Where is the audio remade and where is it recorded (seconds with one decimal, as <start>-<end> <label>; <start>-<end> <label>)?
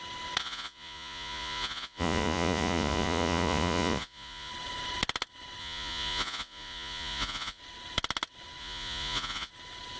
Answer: 0.0-0.4 recorded; 0.4-4.5 remade; 4.5-5.6 recorded; 5.6-7.6 remade; 7.6-8.6 recorded; 8.6-9.5 remade; 9.5-10.0 recorded